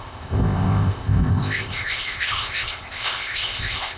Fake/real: fake